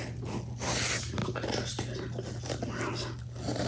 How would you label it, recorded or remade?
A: recorded